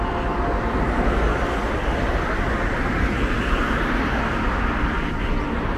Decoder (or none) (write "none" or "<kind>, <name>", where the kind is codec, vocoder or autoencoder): none